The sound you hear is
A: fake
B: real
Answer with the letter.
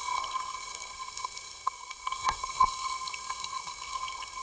A